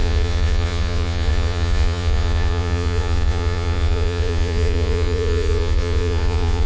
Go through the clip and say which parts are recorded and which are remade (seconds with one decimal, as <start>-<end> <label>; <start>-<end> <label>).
0.0-6.7 remade